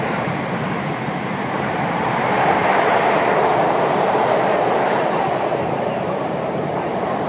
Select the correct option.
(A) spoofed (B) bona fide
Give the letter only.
A